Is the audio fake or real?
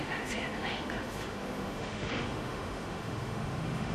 fake